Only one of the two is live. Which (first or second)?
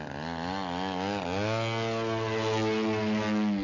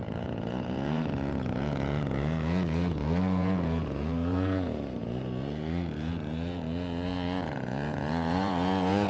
first